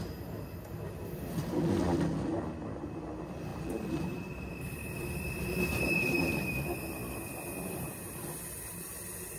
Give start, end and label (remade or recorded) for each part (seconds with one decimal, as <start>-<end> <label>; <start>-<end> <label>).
0.0-3.5 recorded; 3.5-6.8 remade; 6.8-9.4 recorded